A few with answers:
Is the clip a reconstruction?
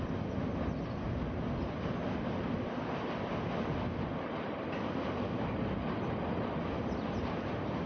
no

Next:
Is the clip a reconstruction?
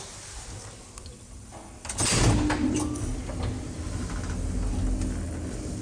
no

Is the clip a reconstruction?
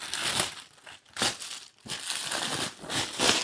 no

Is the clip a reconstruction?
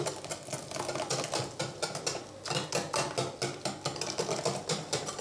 no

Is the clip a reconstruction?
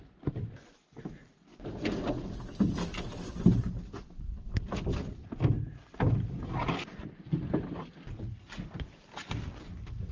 no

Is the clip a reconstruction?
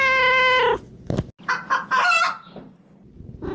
no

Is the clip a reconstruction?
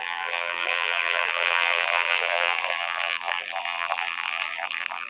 yes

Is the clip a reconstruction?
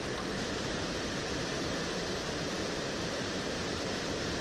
yes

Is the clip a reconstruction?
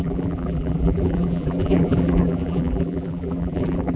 yes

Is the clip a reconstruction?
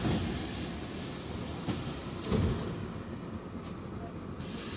no